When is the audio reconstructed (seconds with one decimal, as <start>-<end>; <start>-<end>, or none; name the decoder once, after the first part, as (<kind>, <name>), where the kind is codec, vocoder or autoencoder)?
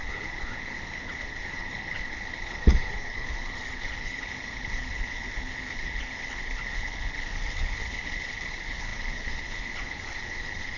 0.0-10.8 (codec, HILCodec)